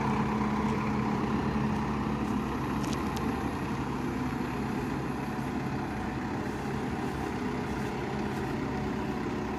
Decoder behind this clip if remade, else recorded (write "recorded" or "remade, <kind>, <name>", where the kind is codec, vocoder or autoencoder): recorded